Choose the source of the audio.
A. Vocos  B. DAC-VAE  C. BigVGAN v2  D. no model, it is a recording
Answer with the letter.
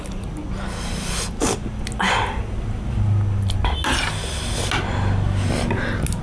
D